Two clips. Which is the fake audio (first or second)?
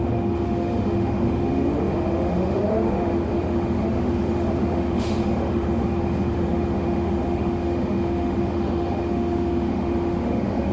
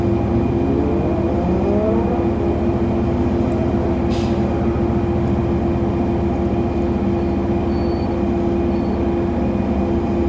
first